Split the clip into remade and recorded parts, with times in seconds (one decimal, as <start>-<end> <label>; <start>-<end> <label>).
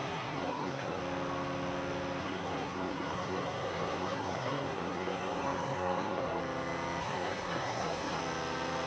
0.0-1.0 remade; 1.0-2.2 recorded; 2.2-6.4 remade; 6.4-7.0 recorded; 7.0-8.2 remade; 8.2-8.9 recorded